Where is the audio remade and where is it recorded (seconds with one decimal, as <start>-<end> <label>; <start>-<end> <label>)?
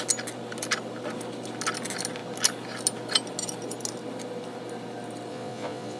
0.0-5.3 recorded; 5.3-6.0 remade